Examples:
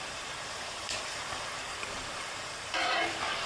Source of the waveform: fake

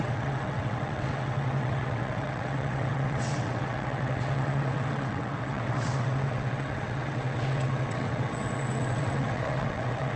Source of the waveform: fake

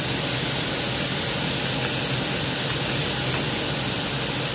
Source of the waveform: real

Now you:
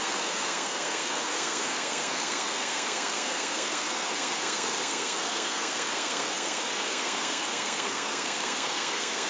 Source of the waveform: fake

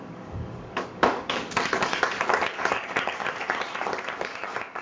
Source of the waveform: fake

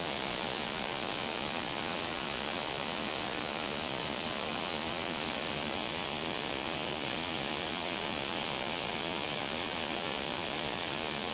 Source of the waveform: fake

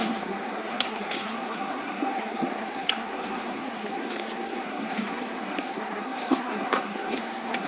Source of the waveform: fake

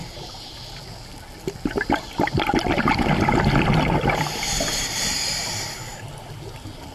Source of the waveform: real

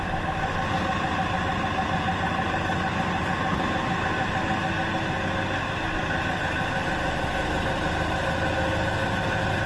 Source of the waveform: real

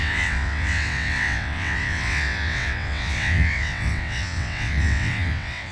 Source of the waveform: fake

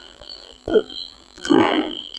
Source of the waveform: fake